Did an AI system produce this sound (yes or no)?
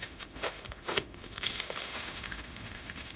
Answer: yes